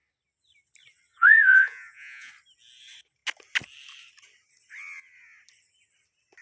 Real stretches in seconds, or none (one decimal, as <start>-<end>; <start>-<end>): 0.0-1.1; 2.3-6.4